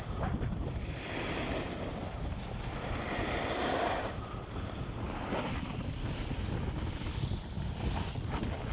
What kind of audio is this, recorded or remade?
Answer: recorded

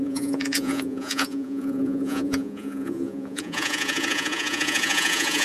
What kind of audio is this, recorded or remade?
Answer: remade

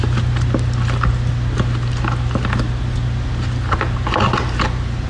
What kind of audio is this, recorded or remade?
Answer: recorded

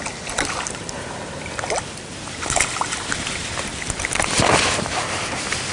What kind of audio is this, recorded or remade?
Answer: recorded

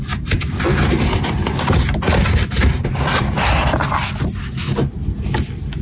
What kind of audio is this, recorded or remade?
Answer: recorded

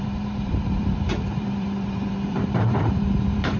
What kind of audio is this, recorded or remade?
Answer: remade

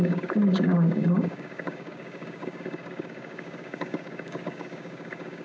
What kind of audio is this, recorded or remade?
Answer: remade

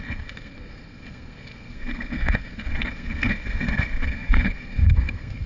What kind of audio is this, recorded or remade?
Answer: remade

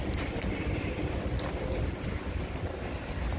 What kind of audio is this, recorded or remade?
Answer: recorded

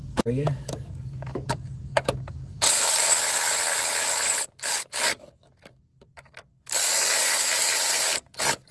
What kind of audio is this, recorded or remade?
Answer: remade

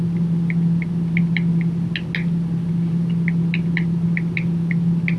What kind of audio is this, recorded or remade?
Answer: recorded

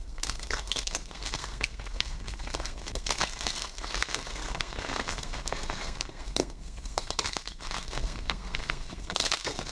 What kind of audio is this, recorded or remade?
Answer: remade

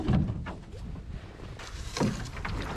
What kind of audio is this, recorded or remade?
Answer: recorded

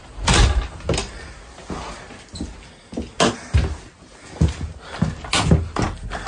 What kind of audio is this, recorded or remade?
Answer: recorded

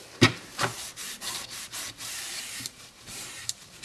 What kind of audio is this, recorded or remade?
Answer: remade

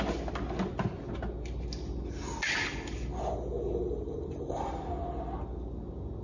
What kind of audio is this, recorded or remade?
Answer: recorded